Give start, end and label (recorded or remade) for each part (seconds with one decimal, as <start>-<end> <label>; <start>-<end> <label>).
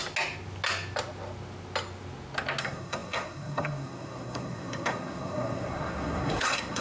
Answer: 0.0-2.6 recorded; 2.6-6.8 remade